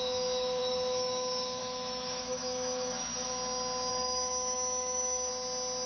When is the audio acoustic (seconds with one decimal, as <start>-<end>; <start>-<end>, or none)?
3.1-3.9; 5.3-5.9